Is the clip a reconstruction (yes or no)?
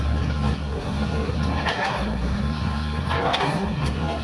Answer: yes